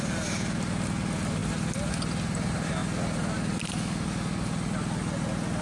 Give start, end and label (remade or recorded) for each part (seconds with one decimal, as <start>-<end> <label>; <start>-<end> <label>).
0.0-5.6 recorded